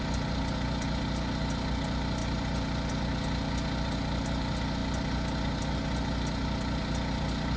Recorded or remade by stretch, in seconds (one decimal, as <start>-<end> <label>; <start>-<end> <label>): 0.0-7.6 recorded